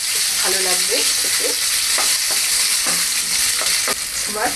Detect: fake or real real